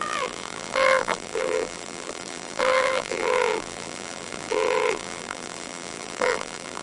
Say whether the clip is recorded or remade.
remade